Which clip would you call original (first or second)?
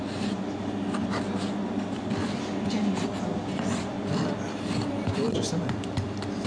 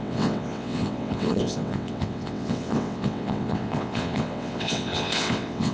first